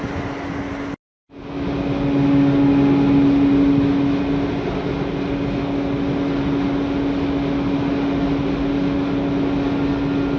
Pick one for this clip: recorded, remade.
recorded